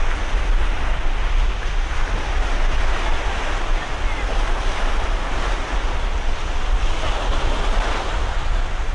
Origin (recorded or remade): recorded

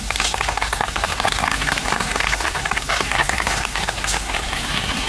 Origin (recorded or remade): remade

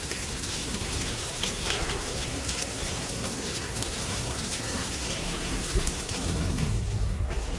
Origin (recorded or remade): remade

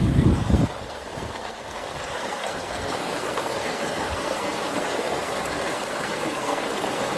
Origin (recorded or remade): remade